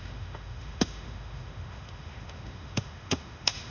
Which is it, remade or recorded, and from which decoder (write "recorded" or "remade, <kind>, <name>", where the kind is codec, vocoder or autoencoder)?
remade, autoencoder, DAC-VAE